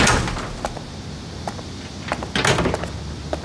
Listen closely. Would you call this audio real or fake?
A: real